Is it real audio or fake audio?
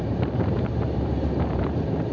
fake